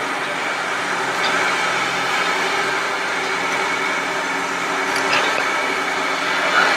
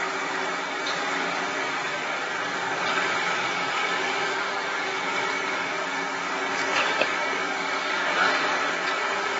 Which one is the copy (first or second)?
second